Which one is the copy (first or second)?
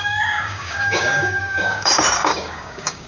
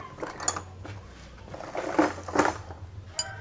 first